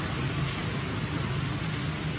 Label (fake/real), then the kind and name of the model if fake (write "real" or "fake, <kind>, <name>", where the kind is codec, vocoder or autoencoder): real